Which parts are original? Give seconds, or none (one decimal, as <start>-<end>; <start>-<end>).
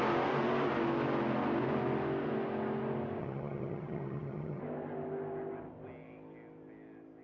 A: 0.0-3.2; 4.6-7.2